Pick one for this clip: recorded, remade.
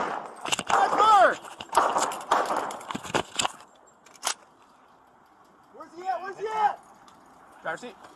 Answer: recorded